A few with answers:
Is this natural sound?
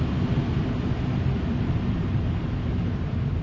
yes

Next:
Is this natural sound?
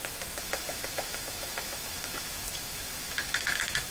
no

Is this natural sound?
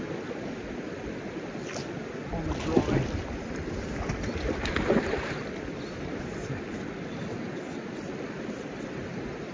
yes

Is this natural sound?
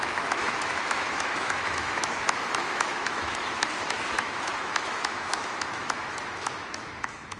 no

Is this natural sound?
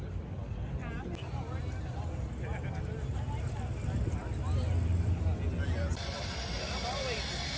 yes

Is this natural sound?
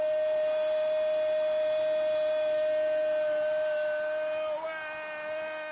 yes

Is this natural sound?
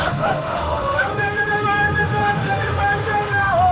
no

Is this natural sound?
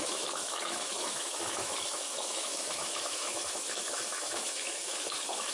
no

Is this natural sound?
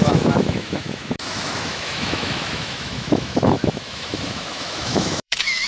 no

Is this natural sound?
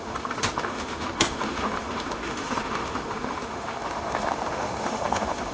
no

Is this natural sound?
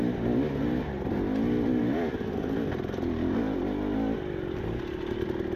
yes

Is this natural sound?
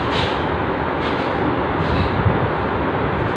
yes